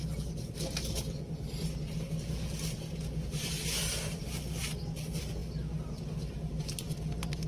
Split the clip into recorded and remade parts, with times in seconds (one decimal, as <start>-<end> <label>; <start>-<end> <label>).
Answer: 0.0-7.5 recorded